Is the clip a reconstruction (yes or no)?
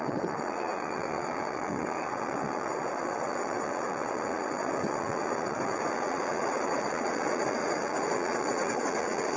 yes